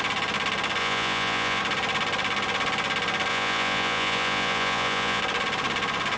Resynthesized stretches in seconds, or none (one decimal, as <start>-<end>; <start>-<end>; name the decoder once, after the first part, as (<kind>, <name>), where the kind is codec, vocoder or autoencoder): 0.8-1.6 (vocoder, Vocos); 3.3-5.2